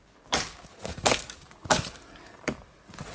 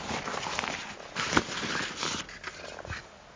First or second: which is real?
second